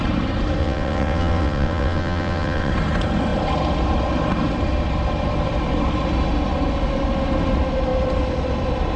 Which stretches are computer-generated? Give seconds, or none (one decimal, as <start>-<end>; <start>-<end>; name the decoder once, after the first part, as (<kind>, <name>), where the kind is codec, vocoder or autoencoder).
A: 0.6-2.7 (vocoder, WaveNeXt)